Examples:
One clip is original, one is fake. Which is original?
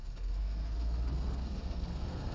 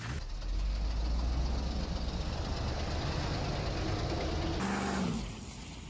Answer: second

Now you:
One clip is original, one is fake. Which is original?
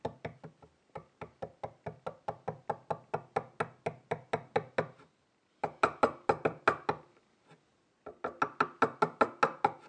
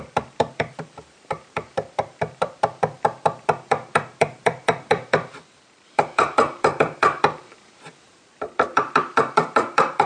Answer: first